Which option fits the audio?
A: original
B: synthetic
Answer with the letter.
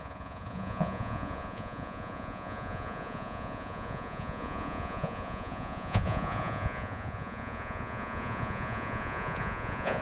B